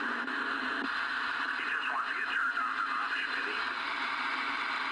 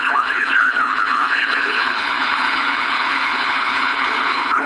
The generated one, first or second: second